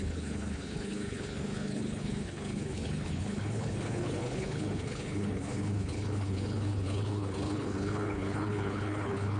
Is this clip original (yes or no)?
no